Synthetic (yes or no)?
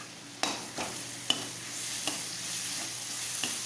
no